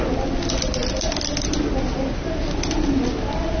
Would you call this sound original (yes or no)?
yes